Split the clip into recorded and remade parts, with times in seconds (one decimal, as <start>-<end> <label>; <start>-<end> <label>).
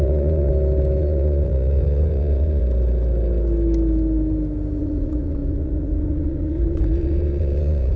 0.0-0.5 remade; 0.5-1.0 recorded; 1.0-2.6 remade; 2.6-4.8 recorded; 4.8-8.0 remade